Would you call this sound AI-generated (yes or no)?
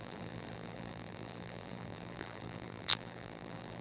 yes